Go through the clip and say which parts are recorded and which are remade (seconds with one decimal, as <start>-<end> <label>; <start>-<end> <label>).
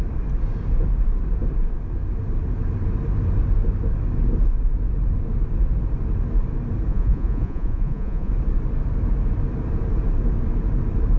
0.0-6.9 recorded; 6.9-8.3 remade; 8.3-11.2 recorded